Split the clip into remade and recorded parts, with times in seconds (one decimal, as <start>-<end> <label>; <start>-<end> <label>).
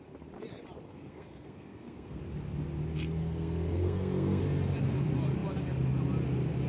0.0-0.9 recorded; 0.9-2.2 remade; 2.2-3.2 recorded; 3.2-4.4 remade; 4.4-6.7 recorded